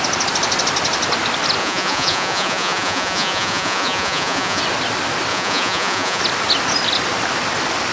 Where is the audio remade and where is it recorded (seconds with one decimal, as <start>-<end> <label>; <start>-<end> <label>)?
0.0-1.6 recorded; 1.6-4.6 remade; 4.6-5.3 recorded; 5.3-6.2 remade; 6.2-7.9 recorded